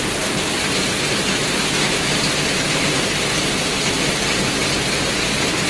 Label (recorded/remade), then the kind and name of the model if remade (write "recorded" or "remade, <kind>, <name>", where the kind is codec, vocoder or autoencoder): recorded